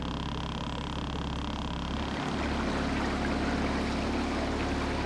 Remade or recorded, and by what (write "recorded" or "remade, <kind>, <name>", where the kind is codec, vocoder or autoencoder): recorded